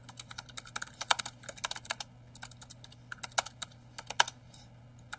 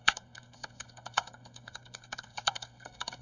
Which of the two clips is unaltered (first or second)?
first